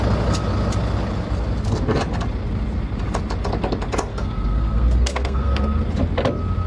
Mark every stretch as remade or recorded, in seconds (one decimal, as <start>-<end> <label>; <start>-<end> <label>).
0.0-4.1 recorded; 4.1-5.8 remade; 5.8-6.7 recorded